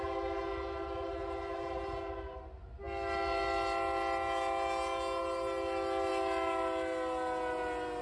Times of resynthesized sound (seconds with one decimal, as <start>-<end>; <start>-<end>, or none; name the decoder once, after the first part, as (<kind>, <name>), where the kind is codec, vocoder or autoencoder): none